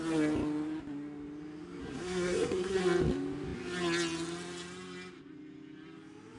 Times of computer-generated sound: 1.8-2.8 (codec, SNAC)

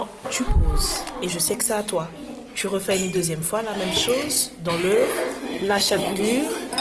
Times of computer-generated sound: 5.4-6.2 (codec, SNAC)

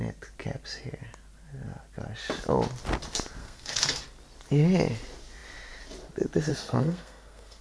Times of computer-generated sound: 3.4-4.0 (codec, SNAC); 6.5-7.6

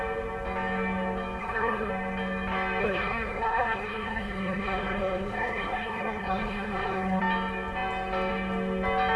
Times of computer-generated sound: 1.4-1.9 (codec, SNAC); 2.8-7.2

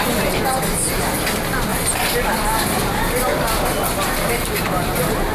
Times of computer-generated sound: none